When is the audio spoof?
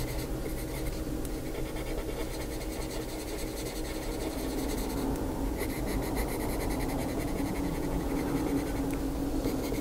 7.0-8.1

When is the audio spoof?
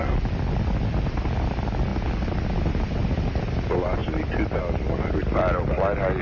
none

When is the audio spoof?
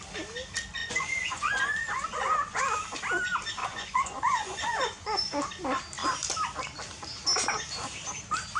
0.8-2.6; 3.6-5.3